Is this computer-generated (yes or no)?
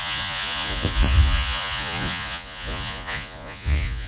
yes